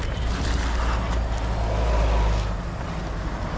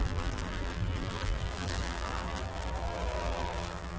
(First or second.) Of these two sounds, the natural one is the first